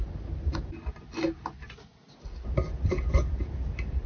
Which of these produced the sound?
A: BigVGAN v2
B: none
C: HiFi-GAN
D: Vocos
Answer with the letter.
B